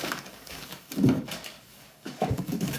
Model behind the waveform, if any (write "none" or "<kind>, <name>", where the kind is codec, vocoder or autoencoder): codec, DAC